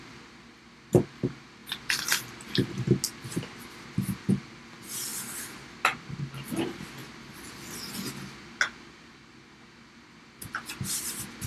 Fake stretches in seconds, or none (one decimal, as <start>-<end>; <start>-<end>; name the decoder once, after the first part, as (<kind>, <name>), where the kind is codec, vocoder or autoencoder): none